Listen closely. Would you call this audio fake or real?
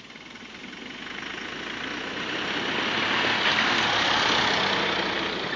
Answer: real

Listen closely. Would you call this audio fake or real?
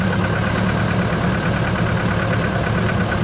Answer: real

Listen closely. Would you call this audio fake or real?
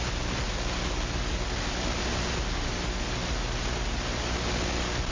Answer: real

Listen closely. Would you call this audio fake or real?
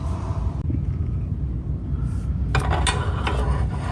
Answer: real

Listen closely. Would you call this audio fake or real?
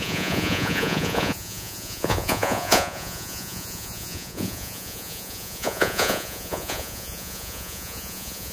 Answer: fake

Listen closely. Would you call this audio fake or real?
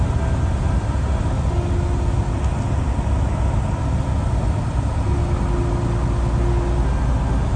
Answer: real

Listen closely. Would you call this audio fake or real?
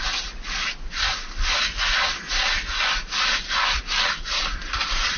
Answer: real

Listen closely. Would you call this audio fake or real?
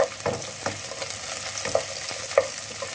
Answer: real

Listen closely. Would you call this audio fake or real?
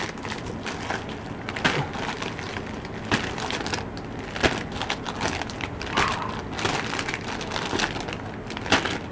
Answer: real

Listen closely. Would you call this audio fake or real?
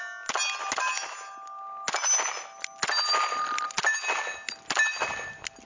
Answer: real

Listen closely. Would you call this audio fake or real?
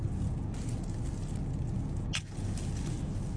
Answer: real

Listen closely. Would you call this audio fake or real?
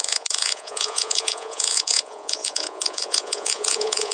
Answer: fake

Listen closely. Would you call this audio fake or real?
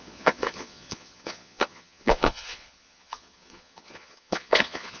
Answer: fake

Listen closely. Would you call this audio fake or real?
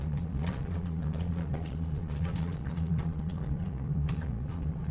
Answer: fake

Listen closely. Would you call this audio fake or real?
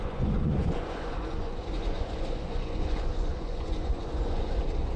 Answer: fake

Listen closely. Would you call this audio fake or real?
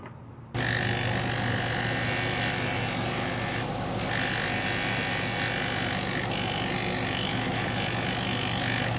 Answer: real